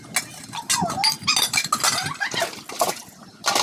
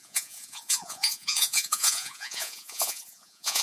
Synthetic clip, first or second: second